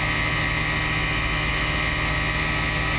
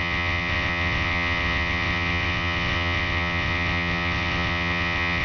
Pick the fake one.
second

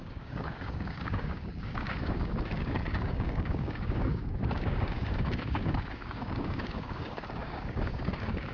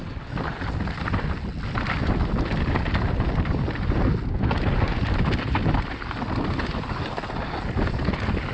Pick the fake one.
first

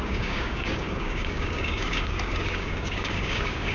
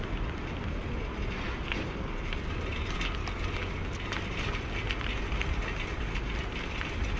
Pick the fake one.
first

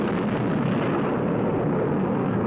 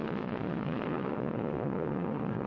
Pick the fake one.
second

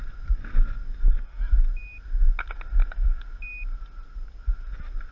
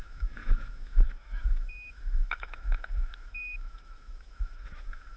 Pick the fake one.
second